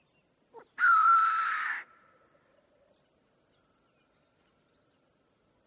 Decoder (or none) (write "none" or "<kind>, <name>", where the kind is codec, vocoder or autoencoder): none